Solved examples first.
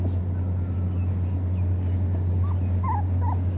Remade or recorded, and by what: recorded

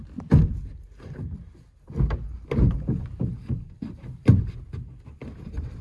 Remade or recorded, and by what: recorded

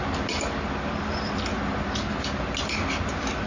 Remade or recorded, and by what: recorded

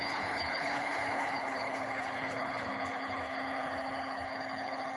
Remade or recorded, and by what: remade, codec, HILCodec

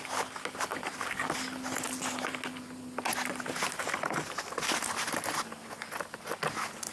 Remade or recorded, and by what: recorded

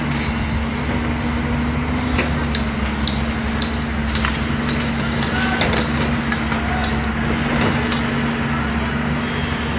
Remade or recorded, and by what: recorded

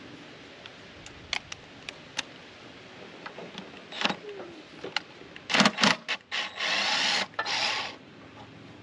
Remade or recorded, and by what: recorded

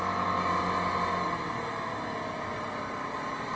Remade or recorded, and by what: recorded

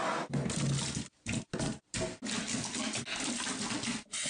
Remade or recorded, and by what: recorded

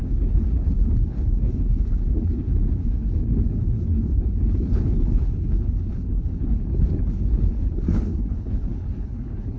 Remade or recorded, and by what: remade, codec, HILCodec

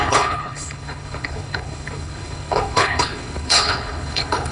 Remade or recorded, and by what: remade, codec, HILCodec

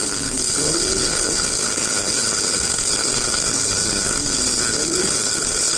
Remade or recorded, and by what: remade, codec, HILCodec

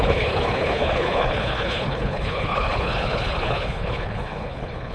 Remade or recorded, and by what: remade, codec, HILCodec